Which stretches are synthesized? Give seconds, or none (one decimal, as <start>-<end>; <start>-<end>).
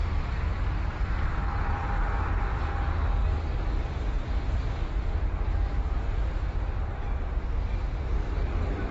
none